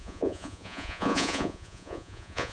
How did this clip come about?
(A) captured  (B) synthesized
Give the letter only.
B